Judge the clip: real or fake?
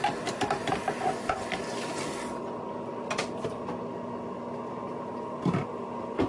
real